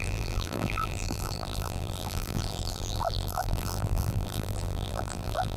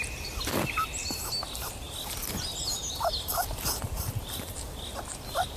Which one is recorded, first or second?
second